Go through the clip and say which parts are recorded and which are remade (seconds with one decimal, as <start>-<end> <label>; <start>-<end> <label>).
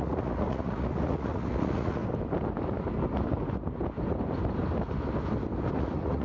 0.0-2.0 remade; 2.0-5.7 recorded; 5.7-6.2 remade